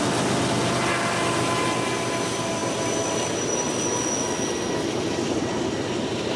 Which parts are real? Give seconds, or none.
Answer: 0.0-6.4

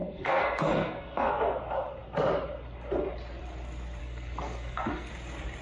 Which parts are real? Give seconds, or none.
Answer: 1.6-4.0; 5.1-5.6

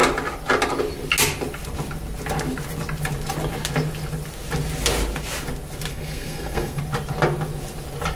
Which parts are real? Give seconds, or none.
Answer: 0.0-5.9; 6.8-8.2

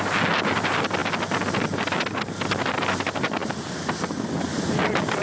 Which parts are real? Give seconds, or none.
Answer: 0.0-5.2

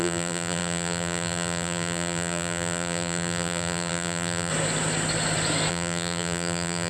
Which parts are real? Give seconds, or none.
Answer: 4.5-5.7

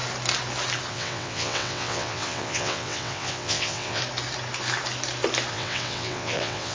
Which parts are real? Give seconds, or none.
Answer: 0.0-0.9; 4.0-5.5

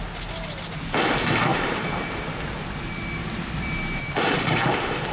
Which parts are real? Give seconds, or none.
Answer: 0.0-1.5; 2.4-3.2; 4.2-5.1

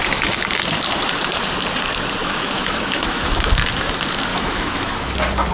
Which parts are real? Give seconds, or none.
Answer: 0.0-2.2; 3.5-4.3; 5.1-5.5